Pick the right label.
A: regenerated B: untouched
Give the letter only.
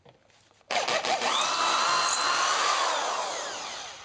A